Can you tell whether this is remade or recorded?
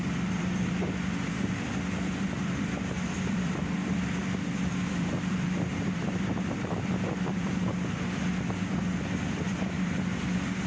remade